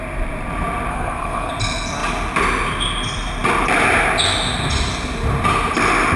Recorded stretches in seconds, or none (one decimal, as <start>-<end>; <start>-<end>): 0.0-0.9; 1.5-6.2